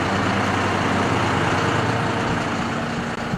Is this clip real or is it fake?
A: real